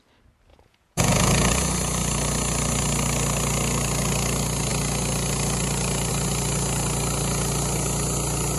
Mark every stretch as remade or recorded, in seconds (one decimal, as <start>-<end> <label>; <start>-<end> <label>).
0.0-0.5 recorded; 0.5-1.7 remade; 1.7-8.6 recorded